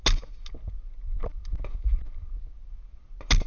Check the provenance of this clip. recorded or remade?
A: recorded